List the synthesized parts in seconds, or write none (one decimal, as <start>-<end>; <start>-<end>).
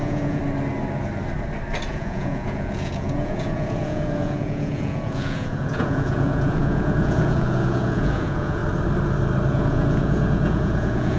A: 0.0-0.4; 1.9-8.6; 9.5-11.2